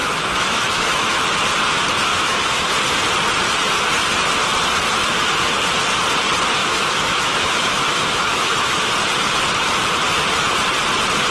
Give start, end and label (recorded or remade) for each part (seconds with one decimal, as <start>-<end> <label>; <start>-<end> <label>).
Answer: 0.0-1.1 remade; 1.1-2.1 recorded; 2.1-2.7 remade; 2.7-6.6 recorded; 6.6-8.9 remade; 8.9-11.3 recorded